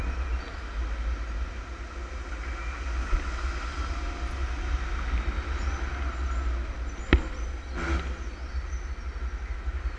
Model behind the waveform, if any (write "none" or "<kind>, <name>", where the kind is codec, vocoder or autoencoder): none